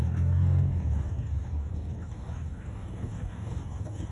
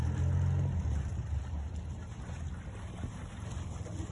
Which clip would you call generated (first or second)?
first